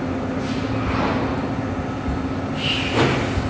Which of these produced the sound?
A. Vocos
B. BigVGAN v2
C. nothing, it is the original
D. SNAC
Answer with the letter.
C